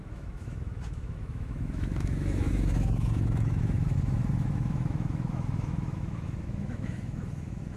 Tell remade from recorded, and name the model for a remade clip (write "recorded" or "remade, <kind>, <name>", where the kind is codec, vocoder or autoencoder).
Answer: remade, autoencoder, DAC-VAE